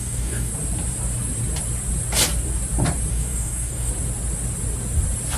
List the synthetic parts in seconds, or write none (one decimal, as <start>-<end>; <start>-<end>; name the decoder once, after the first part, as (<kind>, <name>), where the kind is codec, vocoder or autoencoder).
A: 0.0-0.5 (codec, DAC); 3.1-3.9